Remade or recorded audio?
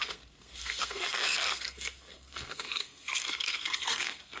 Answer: remade